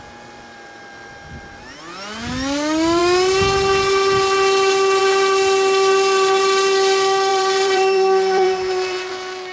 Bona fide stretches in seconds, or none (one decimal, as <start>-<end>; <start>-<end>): 0.0-7.3; 9.1-9.5